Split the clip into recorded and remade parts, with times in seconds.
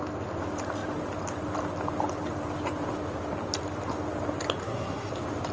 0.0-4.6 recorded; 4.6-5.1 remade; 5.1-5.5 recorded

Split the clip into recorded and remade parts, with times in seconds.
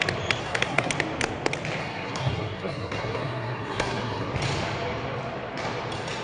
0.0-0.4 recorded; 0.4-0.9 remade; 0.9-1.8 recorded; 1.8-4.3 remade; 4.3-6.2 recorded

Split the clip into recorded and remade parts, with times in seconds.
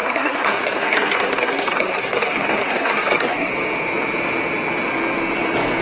0.0-3.5 remade; 3.5-5.8 recorded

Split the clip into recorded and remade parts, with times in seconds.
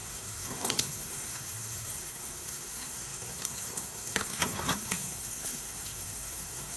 0.0-6.8 remade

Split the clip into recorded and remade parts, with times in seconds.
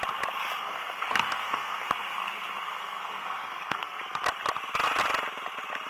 0.0-0.6 recorded; 0.6-4.0 remade; 4.0-5.9 recorded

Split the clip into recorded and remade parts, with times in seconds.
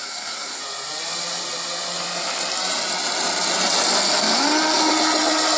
0.0-0.6 remade; 0.6-5.6 recorded